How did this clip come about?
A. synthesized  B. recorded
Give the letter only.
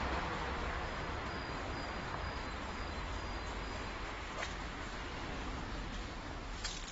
B